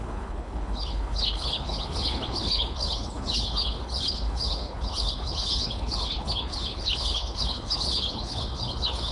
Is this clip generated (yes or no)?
yes